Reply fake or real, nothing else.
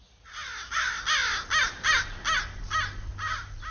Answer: real